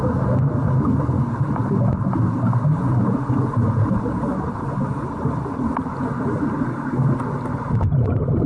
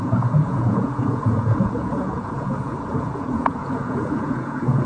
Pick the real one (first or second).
first